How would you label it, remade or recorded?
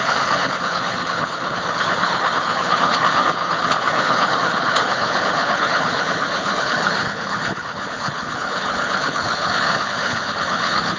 remade